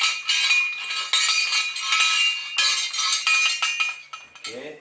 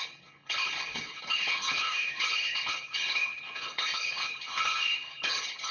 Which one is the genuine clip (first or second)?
first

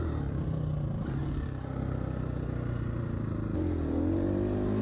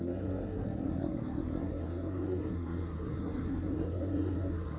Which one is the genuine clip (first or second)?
first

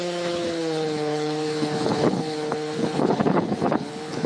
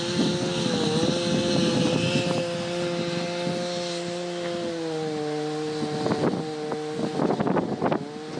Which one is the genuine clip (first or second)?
second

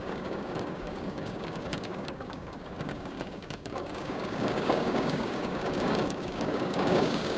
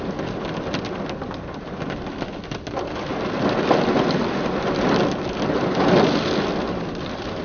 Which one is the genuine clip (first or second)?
second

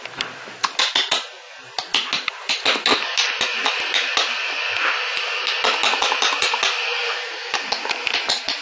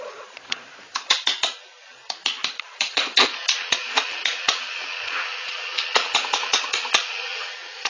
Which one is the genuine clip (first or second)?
first